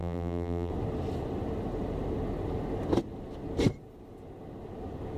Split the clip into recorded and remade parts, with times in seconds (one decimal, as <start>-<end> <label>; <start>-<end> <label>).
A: 0.0-0.7 remade; 0.7-5.2 recorded